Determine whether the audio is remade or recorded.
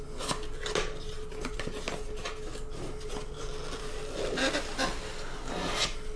recorded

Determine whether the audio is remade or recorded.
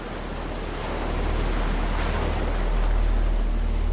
recorded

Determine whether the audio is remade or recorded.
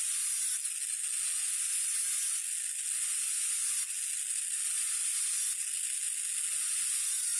recorded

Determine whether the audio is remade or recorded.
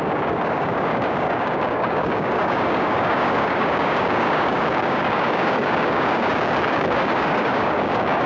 remade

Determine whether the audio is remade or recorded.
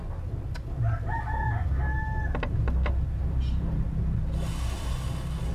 recorded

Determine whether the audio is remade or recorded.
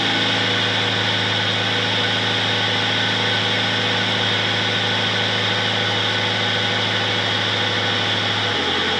recorded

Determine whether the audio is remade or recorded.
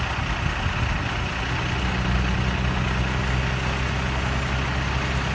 recorded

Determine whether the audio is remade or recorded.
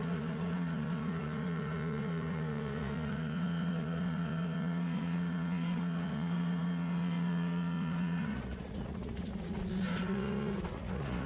remade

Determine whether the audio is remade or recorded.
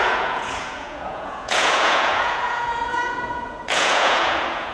remade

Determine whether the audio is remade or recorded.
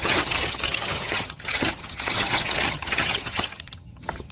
remade